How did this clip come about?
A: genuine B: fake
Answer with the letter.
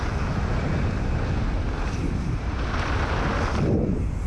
A